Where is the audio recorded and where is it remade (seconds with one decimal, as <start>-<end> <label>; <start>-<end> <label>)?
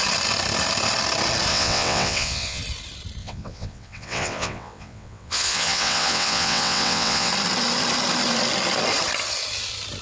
0.0-1.5 recorded; 1.5-2.6 remade; 2.6-3.2 recorded; 3.2-7.3 remade; 7.3-10.0 recorded